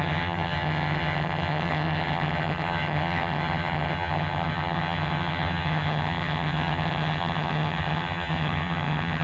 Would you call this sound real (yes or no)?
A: no